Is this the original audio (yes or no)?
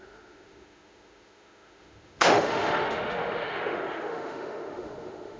no